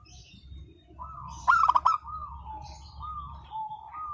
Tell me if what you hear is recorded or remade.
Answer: recorded